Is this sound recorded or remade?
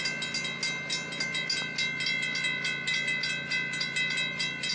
recorded